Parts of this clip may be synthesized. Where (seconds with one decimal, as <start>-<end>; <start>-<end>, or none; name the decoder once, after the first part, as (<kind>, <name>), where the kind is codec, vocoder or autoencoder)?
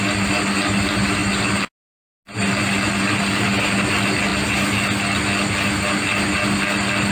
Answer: none